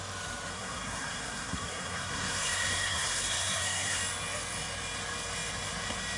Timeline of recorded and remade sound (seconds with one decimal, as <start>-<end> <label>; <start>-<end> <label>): 0.0-0.5 recorded; 0.5-4.0 remade; 4.0-6.2 recorded